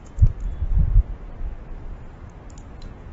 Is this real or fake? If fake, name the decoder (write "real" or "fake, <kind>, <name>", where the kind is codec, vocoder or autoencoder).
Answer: real